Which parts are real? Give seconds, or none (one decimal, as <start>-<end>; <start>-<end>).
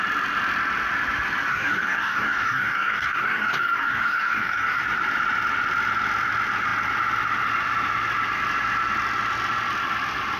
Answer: 0.0-1.5; 4.8-10.4